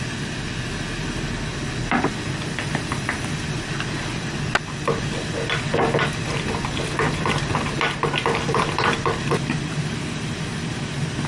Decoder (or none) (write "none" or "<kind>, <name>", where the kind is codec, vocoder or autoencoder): none